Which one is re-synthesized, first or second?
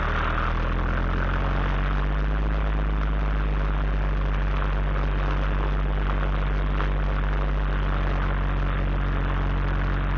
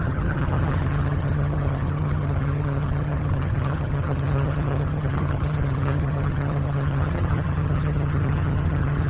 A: second